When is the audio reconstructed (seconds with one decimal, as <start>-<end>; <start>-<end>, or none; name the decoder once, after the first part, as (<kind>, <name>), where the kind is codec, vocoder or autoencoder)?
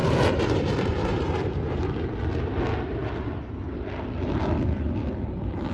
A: 0.0-1.8 (vocoder, BigVGAN v2)